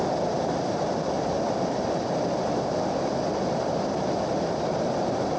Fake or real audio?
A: real